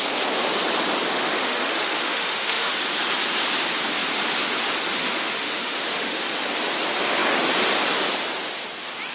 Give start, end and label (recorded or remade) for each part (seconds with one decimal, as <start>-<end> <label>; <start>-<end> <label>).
0.0-1.1 recorded; 1.1-2.7 remade; 2.7-5.0 recorded; 5.0-6.2 remade; 6.2-9.1 recorded